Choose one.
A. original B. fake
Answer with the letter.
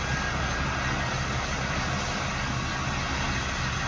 A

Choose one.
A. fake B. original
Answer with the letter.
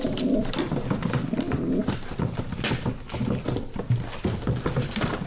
B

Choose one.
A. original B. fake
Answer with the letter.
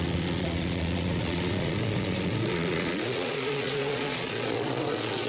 B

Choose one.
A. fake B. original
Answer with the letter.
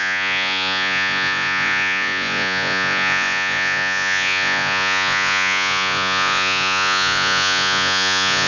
A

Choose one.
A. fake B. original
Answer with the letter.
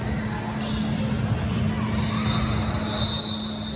B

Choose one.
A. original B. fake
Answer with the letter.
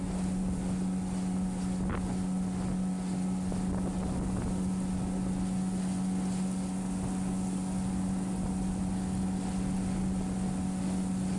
A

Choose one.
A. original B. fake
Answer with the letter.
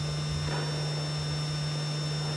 A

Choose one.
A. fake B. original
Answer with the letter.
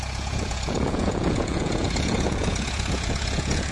A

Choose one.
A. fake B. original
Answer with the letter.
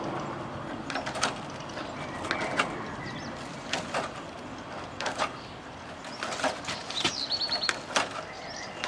B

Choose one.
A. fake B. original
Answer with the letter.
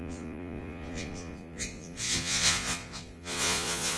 A